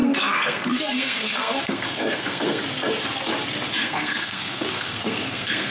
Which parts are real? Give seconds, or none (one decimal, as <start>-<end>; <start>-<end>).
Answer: 2.6-3.8